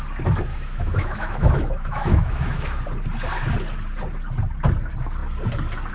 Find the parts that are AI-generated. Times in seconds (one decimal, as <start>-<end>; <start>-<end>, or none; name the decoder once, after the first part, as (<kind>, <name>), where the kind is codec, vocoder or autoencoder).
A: 0.5-2.8 (autoencoder, DAC-VAE)

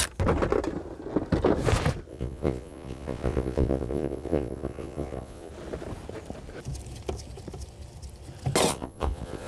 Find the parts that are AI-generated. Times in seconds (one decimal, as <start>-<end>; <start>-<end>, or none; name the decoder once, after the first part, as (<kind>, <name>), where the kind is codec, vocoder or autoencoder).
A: 2.1-5.5 (vocoder, Vocos); 8.7-9.5

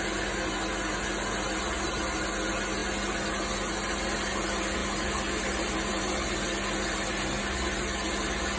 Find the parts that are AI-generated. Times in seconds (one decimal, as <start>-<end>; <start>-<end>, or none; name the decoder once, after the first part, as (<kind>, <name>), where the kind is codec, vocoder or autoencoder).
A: none